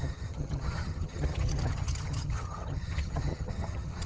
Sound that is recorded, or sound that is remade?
remade